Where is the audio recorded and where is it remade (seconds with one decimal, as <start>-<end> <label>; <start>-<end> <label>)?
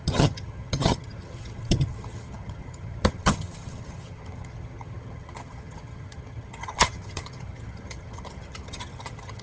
0.0-9.4 remade